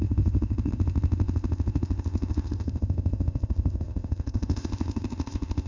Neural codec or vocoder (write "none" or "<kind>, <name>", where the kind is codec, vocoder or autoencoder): codec, ZipCodec